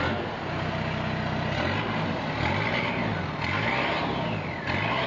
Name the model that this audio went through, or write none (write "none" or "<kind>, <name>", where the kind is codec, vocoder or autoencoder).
none